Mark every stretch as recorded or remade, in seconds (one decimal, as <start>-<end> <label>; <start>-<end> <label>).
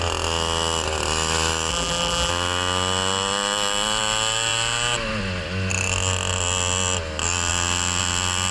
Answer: 0.0-1.7 recorded; 1.7-2.3 remade; 2.3-8.5 recorded